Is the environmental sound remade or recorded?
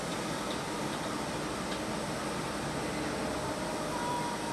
recorded